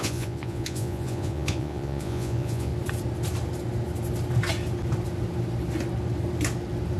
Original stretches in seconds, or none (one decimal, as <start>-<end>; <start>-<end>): 2.7-7.0